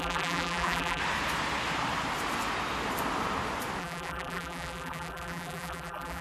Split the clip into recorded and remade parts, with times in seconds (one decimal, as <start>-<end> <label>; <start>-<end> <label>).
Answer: 0.0-1.0 remade; 1.0-3.8 recorded; 3.8-6.2 remade